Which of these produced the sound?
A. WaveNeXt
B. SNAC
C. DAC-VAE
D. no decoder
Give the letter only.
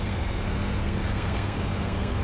B